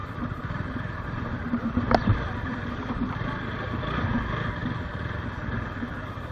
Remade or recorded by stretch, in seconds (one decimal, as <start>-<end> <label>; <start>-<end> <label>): 0.0-3.8 remade; 3.8-4.6 recorded; 4.6-6.3 remade